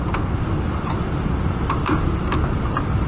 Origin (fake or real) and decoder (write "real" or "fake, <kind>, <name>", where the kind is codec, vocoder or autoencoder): real